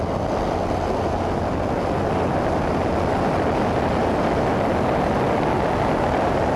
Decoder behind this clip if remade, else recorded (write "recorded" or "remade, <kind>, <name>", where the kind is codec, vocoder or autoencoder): recorded